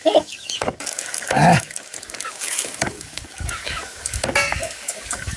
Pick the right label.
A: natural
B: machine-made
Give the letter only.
B